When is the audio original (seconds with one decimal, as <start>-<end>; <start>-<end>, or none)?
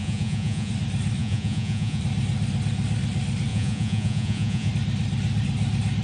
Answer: 0.7-1.2; 2.0-3.5; 4.7-6.0